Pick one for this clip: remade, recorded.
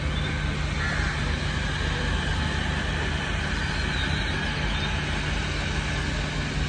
recorded